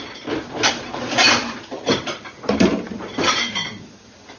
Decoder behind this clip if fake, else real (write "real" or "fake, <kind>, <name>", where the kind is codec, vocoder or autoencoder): real